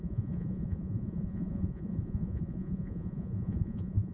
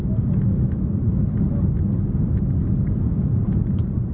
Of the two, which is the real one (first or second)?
second